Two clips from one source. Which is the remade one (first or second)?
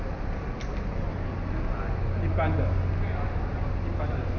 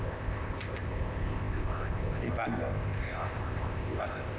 second